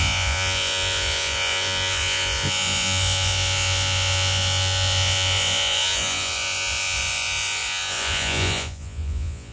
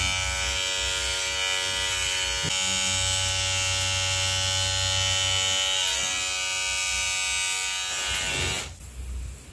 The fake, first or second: first